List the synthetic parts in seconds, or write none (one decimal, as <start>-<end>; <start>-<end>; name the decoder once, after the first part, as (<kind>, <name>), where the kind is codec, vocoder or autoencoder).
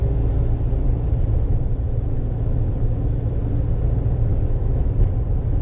4.3-4.9 (autoencoder, DAC-VAE)